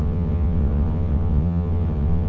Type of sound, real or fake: fake